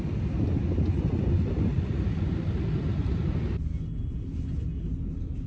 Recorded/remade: recorded